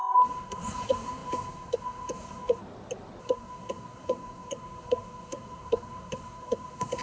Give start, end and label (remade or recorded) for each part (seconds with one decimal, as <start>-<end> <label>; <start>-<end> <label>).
0.0-2.6 remade; 2.6-3.2 recorded; 3.2-7.0 remade